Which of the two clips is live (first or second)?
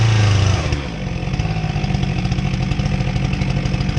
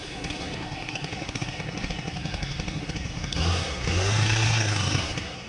first